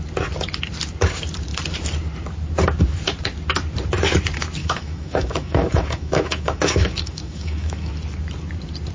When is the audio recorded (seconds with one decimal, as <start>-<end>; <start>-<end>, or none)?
0.0-4.6; 7.9-8.9